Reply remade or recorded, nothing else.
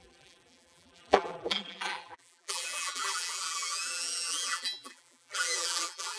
remade